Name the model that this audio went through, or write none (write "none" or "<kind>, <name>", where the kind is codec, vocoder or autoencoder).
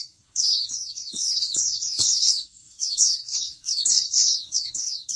codec, SNAC